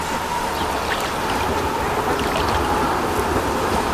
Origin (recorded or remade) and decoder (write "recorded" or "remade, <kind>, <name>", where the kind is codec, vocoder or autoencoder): recorded